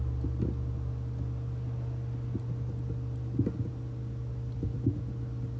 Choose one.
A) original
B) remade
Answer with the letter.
A